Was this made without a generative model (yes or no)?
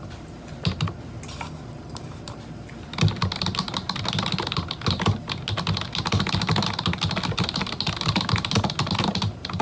yes